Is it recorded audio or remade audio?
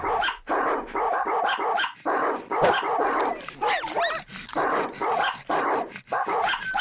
recorded